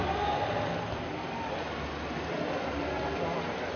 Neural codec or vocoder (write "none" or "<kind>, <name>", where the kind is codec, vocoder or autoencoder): none